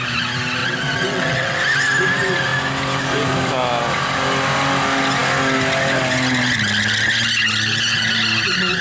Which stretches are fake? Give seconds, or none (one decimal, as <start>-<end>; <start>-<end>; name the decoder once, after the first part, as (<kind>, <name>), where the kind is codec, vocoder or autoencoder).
0.6-1.6 (vocoder, WaveNeXt)